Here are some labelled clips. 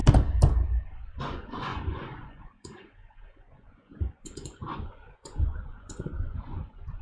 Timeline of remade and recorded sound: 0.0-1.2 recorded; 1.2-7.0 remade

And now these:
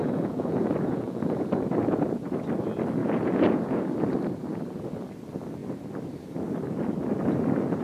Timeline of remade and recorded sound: 0.0-2.4 remade; 2.4-3.0 recorded; 3.0-3.8 remade; 3.8-7.8 recorded

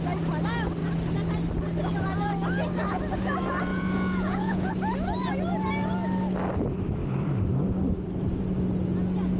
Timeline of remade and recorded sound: 0.0-3.7 recorded; 3.7-4.7 remade; 4.7-9.4 recorded

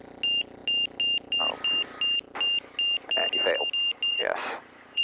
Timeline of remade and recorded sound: 0.0-4.1 recorded; 4.1-5.0 remade

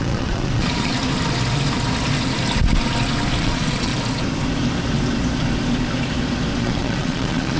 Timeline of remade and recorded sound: 0.0-0.9 remade; 0.9-3.4 recorded; 3.4-3.9 remade; 3.9-6.6 recorded; 6.6-7.6 remade

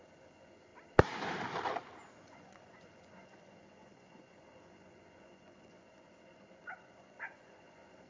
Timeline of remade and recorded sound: 0.0-0.7 remade; 0.7-2.1 recorded; 2.1-8.1 remade